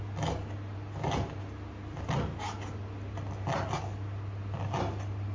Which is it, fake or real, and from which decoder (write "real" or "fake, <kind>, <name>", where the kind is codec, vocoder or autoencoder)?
real